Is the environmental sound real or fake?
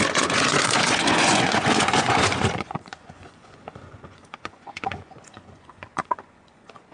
fake